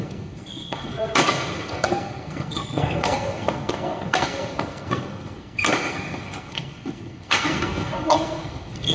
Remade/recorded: remade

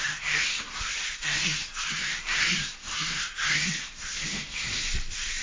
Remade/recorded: remade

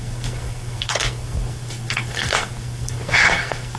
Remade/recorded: remade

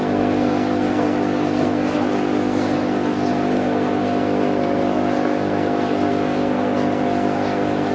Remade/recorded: remade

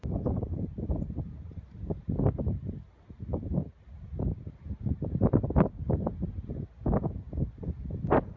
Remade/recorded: recorded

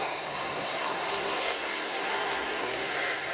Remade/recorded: remade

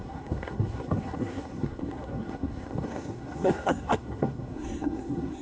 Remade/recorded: remade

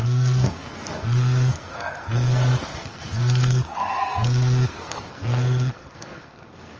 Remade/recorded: remade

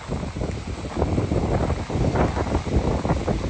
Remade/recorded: recorded